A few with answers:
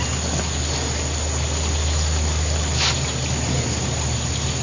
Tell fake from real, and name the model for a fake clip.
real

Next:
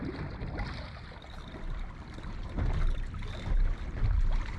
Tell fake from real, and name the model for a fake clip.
fake, vocoder, BigVGAN v2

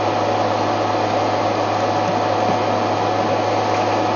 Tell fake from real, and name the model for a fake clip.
real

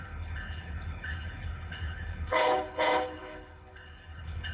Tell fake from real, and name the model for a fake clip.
fake, codec, HILCodec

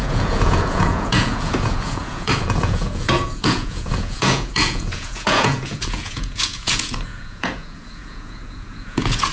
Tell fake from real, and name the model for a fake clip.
fake, vocoder, Vocos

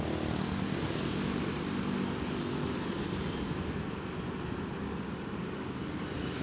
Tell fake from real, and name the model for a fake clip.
real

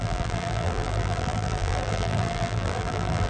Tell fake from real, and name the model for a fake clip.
fake, vocoder, BigVGAN v2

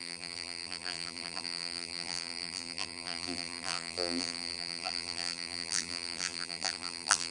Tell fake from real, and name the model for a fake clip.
fake, vocoder, BigVGAN v2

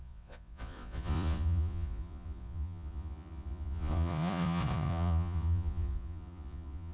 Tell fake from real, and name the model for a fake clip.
fake, vocoder, Vocos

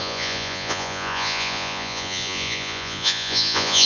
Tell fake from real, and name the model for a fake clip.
fake, vocoder, Vocos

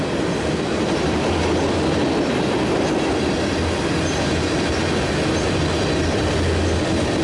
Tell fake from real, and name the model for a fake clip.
real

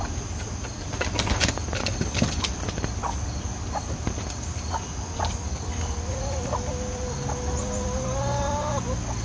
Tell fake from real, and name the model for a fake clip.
real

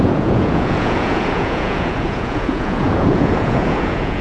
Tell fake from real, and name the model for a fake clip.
fake, vocoder, Vocos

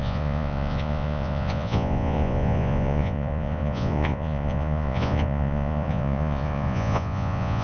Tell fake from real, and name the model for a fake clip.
fake, vocoder, Vocos